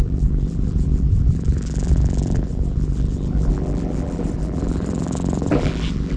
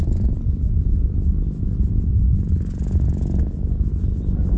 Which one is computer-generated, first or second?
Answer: first